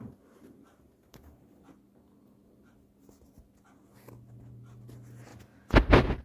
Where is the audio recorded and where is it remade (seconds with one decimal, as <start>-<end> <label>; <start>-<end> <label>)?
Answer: 0.0-5.3 recorded; 5.3-6.2 remade